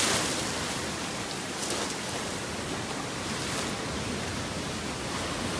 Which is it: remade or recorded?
recorded